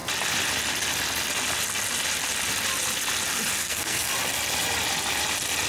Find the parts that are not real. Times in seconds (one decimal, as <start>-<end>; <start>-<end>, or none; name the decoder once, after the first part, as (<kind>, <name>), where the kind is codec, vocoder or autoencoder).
3.6-4.1 (codec, SNAC)